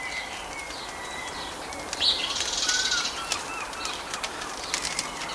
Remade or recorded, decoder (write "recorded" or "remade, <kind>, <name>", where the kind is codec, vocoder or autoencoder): recorded